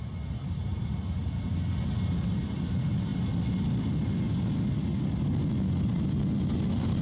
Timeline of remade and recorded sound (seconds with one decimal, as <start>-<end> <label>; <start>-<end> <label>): 0.0-7.0 recorded